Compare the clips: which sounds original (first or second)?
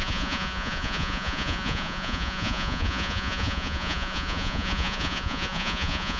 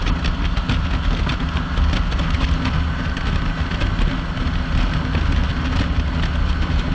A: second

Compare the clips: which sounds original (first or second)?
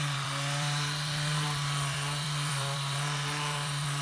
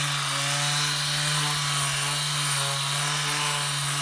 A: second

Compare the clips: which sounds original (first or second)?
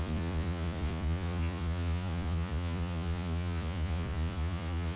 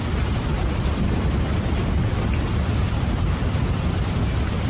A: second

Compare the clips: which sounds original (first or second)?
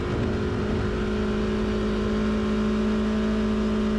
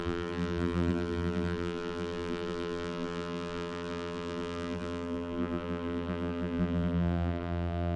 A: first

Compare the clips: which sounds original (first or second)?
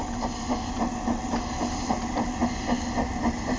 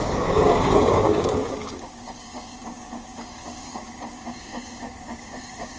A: first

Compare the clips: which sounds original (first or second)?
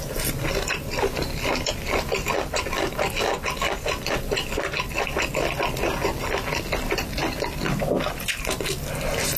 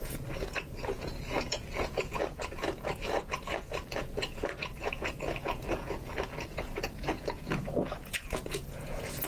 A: first